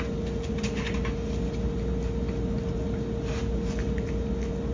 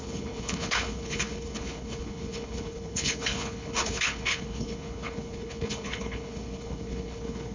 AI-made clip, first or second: second